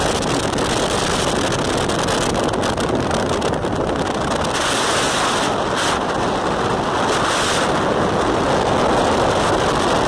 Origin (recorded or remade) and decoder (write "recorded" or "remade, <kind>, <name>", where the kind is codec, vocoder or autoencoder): recorded